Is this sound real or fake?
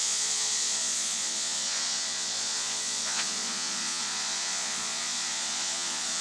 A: fake